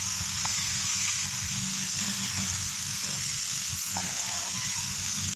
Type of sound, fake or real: fake